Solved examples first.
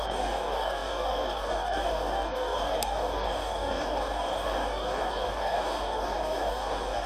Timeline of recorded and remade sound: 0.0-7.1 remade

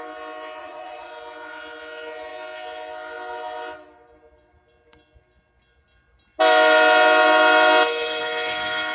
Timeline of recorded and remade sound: 0.0-0.6 recorded; 0.6-1.1 remade; 1.1-8.9 recorded

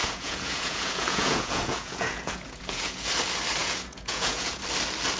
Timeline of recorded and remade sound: 0.0-3.1 remade; 3.1-3.6 recorded; 3.6-4.6 remade; 4.6-5.2 recorded